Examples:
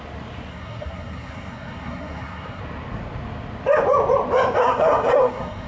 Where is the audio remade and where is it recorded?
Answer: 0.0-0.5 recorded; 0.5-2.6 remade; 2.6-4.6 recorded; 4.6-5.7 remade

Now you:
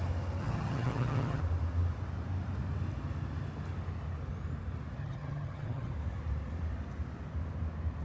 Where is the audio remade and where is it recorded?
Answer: 0.0-0.4 recorded; 0.4-1.4 remade; 1.4-5.0 recorded; 5.0-5.9 remade; 5.9-8.0 recorded